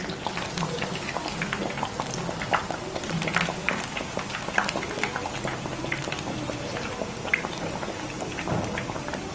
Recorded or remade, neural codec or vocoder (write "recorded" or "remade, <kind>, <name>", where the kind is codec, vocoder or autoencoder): recorded